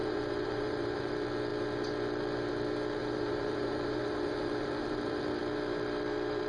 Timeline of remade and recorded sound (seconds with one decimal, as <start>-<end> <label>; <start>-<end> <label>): 0.0-1.1 remade; 1.1-3.0 recorded; 3.0-5.4 remade; 5.4-6.5 recorded